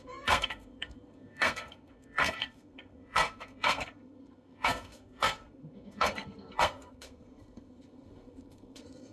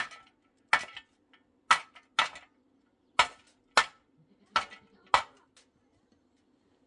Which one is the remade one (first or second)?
first